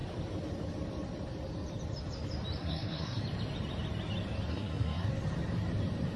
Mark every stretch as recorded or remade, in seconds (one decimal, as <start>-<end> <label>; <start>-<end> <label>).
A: 0.0-2.6 recorded; 2.6-3.2 remade; 3.2-4.5 recorded; 4.5-5.1 remade; 5.1-6.2 recorded